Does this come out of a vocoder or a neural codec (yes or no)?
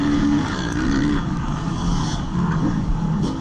yes